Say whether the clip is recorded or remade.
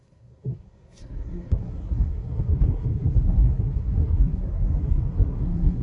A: remade